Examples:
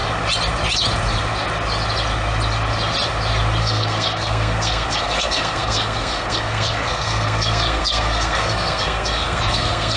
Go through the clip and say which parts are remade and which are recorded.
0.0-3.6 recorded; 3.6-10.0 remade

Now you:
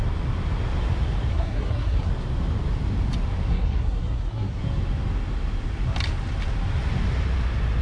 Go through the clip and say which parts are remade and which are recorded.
0.0-1.3 recorded; 1.3-2.1 remade; 2.1-3.5 recorded; 3.5-4.6 remade; 4.6-7.8 recorded

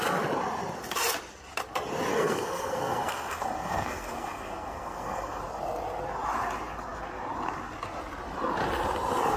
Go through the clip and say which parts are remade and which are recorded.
0.0-2.1 recorded; 2.1-5.4 remade; 5.4-9.4 recorded

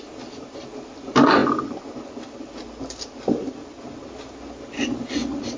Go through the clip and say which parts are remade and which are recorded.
0.0-5.6 recorded